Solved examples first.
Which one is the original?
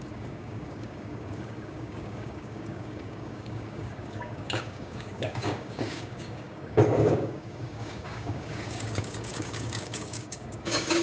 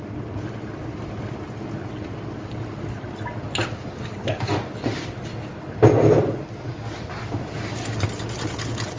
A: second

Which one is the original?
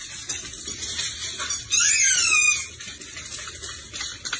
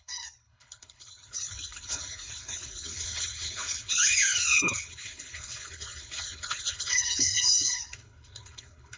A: first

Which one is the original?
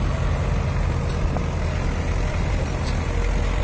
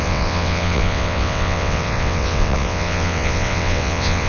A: first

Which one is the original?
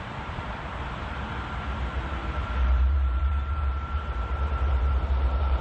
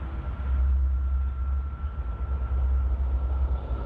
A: second